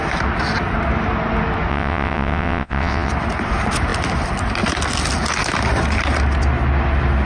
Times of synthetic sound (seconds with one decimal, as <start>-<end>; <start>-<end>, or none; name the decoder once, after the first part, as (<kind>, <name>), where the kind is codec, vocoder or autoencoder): 1.7-3.1 (vocoder, WaveNeXt)

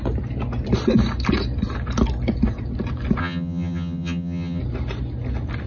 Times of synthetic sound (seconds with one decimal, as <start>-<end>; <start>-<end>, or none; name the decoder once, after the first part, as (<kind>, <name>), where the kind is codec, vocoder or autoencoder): 3.2-4.6 (vocoder, HiFi-GAN)

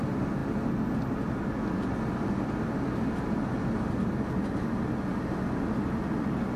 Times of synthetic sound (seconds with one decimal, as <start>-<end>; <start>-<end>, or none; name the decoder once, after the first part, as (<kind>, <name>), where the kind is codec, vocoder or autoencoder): none

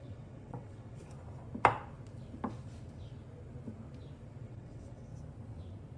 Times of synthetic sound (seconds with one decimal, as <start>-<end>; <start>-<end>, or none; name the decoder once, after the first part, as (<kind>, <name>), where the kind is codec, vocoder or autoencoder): 0.0-1.0 (vocoder, WaveNeXt); 4.4-5.1